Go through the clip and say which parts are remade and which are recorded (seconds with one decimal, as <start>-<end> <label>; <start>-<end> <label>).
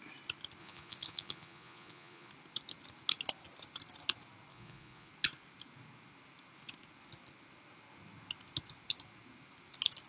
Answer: 0.0-0.6 recorded; 0.6-2.3 remade; 2.3-4.5 recorded; 4.5-5.1 remade; 5.1-10.1 recorded